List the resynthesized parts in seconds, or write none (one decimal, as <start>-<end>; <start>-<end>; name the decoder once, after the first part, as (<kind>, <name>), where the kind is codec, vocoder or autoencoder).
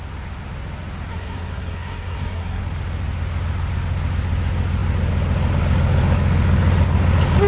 1.1-2.6 (codec, SNAC)